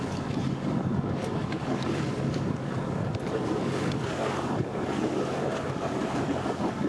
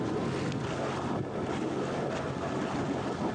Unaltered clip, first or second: second